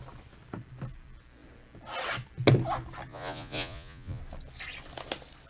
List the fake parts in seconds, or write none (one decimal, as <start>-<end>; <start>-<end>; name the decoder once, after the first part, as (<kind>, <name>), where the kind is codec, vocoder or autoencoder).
3.1-4.2 (vocoder, Vocos)